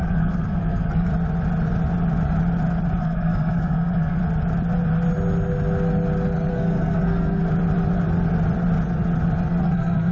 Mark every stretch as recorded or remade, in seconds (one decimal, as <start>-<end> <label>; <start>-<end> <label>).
0.0-1.1 remade; 1.1-3.0 recorded; 3.0-4.2 remade; 4.2-6.5 recorded; 6.5-7.4 remade; 7.4-9.6 recorded; 9.6-10.1 remade